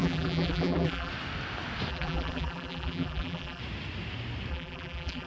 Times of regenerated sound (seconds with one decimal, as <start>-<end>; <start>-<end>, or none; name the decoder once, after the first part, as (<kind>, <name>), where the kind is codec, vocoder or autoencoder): 0.0-1.1 (vocoder, BigVGAN v2); 1.9-3.6; 4.5-5.3